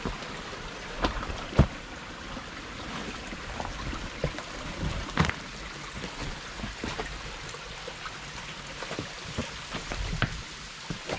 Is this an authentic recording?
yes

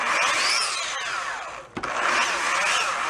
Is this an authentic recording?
yes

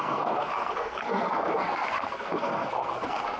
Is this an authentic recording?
no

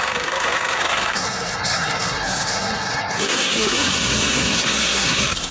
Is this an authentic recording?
no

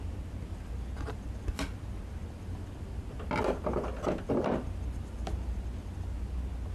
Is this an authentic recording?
yes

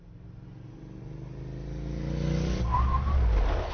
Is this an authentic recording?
yes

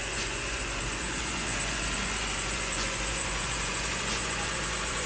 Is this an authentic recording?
no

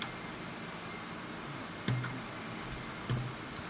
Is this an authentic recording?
yes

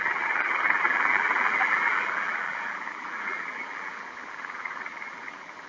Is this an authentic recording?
no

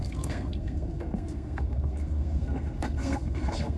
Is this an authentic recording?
no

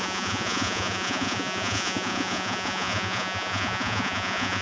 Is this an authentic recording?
no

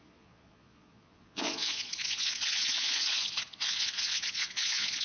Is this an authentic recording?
no